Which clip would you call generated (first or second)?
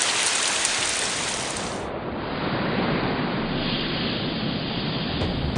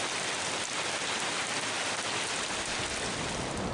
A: first